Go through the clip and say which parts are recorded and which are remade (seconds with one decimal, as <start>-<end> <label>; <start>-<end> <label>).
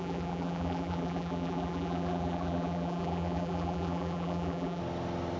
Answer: 0.0-4.8 remade; 4.8-5.4 recorded